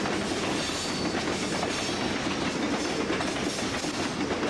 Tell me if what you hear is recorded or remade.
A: recorded